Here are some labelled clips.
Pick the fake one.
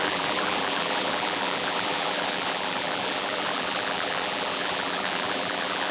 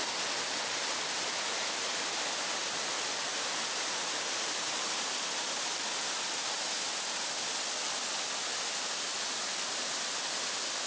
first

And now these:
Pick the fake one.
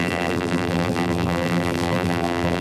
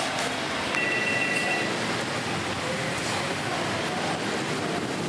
first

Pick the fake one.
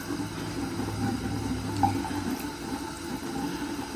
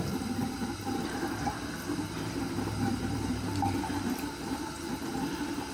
second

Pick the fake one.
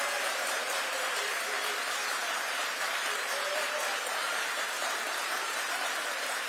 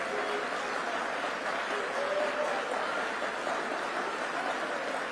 first